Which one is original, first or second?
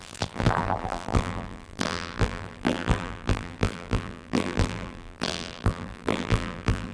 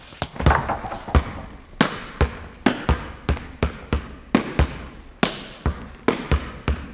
second